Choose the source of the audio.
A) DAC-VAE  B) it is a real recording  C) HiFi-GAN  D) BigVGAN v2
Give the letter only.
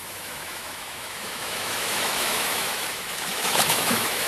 A